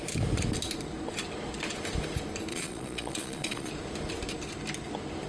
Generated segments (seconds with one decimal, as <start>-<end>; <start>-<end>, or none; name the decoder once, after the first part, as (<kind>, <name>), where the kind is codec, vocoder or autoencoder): 2.5-3.7 (vocoder, Vocos)